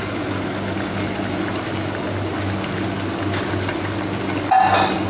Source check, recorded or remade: recorded